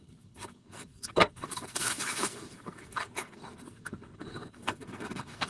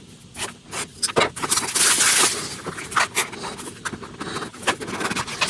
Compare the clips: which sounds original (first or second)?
second